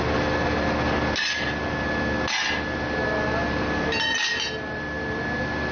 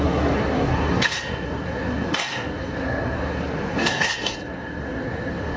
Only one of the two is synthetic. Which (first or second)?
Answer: second